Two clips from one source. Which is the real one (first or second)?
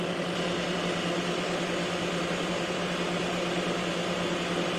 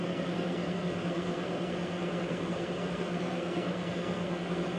first